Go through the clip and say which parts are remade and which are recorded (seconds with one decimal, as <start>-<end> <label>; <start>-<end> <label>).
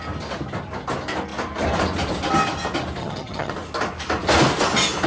0.0-3.0 recorded; 3.0-3.5 remade; 3.5-5.1 recorded